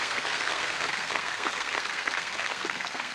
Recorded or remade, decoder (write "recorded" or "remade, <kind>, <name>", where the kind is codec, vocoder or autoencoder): remade, codec, SNAC